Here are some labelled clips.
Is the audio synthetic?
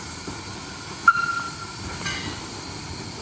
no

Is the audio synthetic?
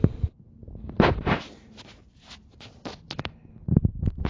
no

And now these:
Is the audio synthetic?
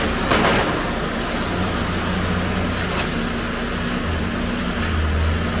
no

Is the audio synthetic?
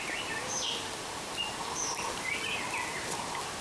no